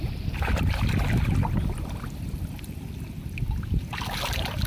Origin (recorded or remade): recorded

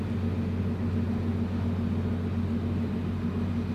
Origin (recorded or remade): recorded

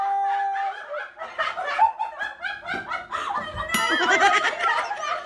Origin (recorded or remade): recorded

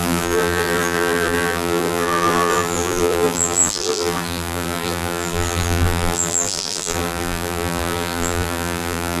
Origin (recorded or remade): remade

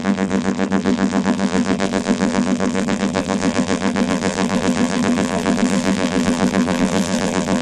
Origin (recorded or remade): remade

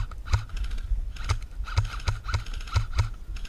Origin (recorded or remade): recorded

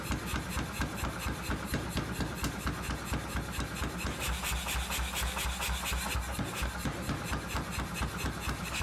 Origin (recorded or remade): recorded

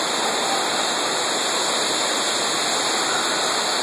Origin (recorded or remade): recorded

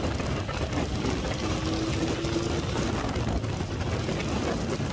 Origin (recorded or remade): recorded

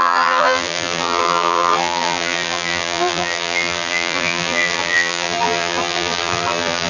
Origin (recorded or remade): remade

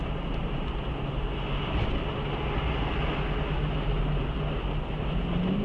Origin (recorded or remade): recorded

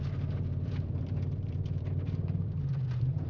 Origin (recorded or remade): remade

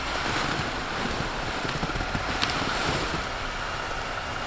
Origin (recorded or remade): recorded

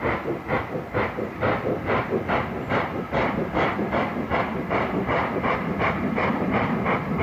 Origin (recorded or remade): recorded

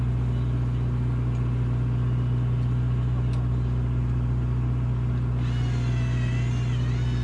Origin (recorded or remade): recorded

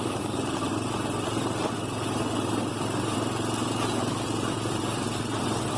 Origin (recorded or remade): remade